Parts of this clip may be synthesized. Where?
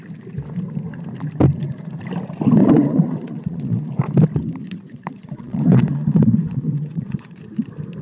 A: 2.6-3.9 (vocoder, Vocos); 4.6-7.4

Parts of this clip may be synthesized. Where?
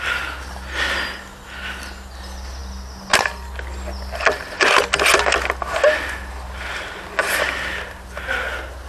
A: none